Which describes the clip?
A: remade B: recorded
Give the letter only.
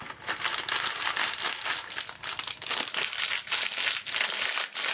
B